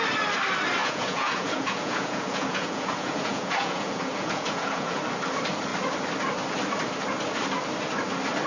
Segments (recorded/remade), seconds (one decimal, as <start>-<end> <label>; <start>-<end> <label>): 0.0-0.8 recorded; 0.8-5.0 remade; 5.0-8.5 recorded